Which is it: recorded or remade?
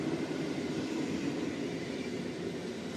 recorded